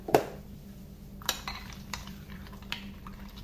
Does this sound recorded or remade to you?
remade